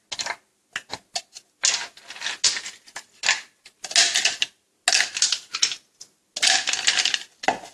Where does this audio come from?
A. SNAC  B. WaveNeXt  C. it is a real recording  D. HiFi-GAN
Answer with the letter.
C